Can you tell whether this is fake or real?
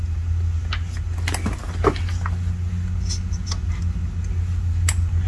real